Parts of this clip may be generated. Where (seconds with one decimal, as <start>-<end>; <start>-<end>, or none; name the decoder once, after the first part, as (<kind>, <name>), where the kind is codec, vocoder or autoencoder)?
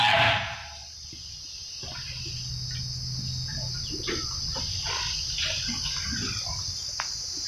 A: none